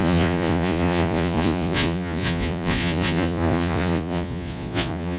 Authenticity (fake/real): fake